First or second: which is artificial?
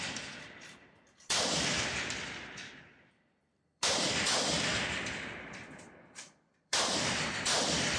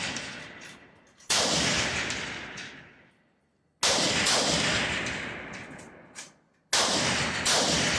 first